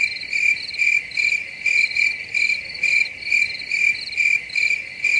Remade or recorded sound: recorded